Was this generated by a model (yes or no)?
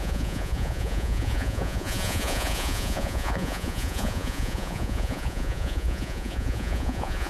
yes